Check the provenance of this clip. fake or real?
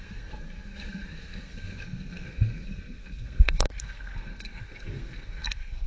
fake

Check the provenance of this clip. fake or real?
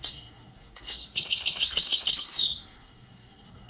fake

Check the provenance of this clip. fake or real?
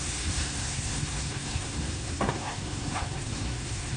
fake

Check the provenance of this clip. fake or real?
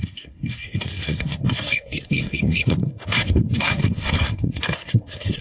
fake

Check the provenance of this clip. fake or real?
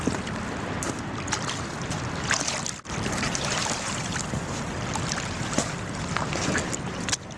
real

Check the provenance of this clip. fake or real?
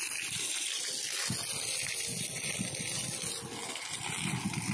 real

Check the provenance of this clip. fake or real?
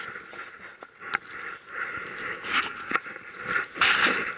real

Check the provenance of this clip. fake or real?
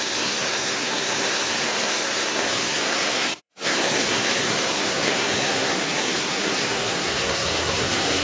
fake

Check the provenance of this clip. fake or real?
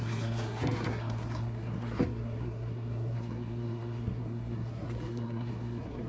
fake